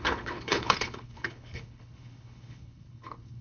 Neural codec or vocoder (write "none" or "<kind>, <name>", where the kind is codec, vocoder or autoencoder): codec, HILCodec